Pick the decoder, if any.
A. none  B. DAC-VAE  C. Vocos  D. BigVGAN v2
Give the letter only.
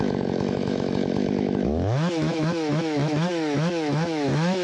B